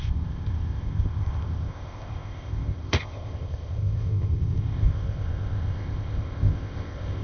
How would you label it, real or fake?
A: fake